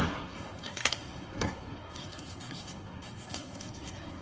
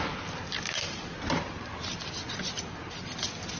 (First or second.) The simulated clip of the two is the first